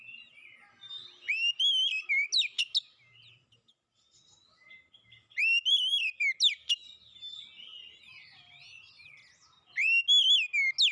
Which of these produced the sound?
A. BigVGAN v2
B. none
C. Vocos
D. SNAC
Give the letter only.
B